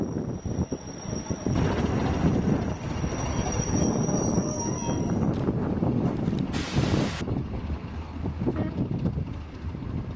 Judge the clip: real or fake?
real